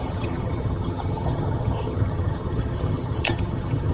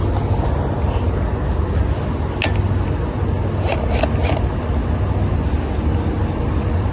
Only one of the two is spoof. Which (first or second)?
first